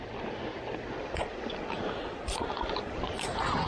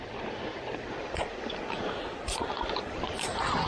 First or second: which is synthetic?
second